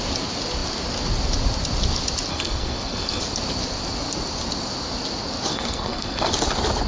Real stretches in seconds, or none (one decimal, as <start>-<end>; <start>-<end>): 0.0-2.3; 3.2-5.5; 6.3-6.9